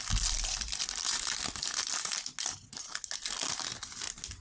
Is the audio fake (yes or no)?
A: no